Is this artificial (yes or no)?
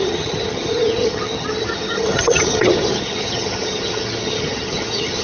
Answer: yes